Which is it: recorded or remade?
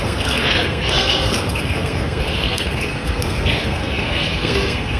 remade